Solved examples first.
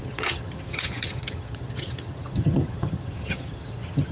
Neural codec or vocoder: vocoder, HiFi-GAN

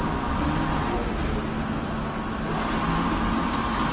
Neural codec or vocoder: none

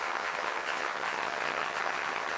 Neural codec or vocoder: vocoder, HiFi-GAN